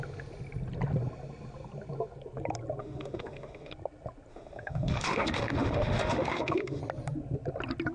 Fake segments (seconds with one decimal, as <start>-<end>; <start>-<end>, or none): 2.8-3.7; 4.3-6.8

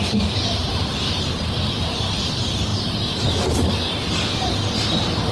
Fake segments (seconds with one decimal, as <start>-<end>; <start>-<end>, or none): 0.0-2.7

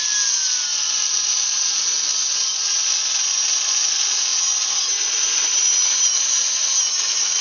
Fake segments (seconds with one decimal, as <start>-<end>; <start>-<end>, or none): none

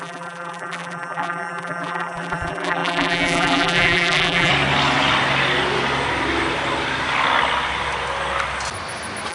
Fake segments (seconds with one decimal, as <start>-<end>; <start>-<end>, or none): 0.0-4.5

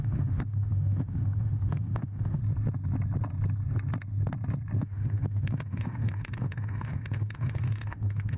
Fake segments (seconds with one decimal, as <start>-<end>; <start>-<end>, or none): 0.0-2.4; 4.8-8.4

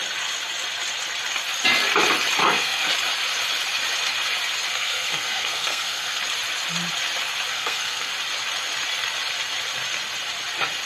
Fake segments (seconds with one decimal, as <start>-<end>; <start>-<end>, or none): 2.4-2.9; 4.7-6.2; 7.5-8.1